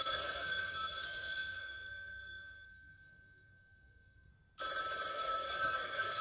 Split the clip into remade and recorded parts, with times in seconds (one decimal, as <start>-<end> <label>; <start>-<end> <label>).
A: 0.0-4.3 remade; 4.3-5.1 recorded; 5.1-6.2 remade